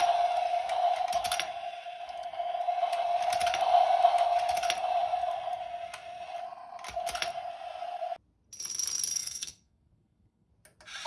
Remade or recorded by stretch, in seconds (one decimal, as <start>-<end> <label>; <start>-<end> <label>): 0.0-9.1 recorded; 9.1-10.5 remade; 10.5-11.1 recorded